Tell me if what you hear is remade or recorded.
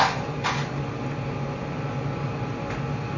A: recorded